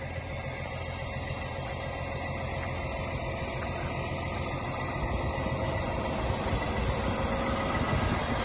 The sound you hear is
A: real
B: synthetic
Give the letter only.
A